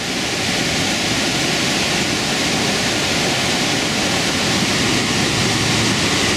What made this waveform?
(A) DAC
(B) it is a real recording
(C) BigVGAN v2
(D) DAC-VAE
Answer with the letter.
B